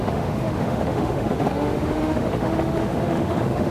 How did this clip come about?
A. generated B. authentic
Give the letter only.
A